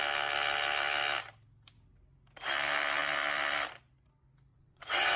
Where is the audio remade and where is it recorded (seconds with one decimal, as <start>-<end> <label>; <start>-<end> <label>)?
0.0-4.5 recorded; 4.5-5.2 remade